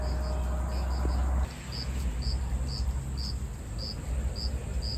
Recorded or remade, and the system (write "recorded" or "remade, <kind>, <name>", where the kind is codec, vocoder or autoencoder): recorded